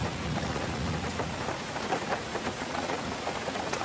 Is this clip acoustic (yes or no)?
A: no